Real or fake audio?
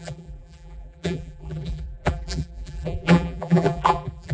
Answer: fake